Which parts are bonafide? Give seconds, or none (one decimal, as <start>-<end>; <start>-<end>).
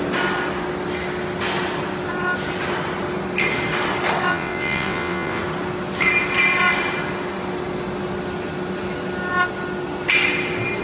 0.0-4.3; 5.4-10.8